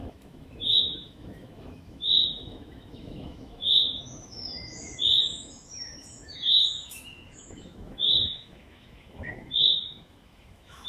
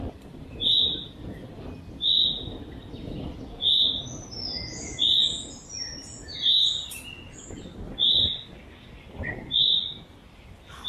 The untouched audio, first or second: second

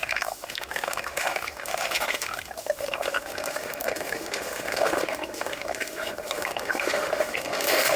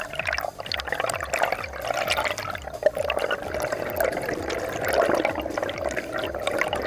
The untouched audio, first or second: second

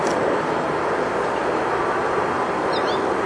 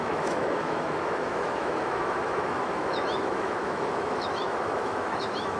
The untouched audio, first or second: first